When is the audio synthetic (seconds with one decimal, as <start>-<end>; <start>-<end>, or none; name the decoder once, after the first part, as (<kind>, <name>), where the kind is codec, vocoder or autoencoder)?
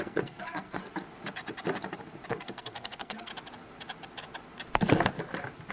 0.0-0.8 (codec, SNAC); 2.3-3.3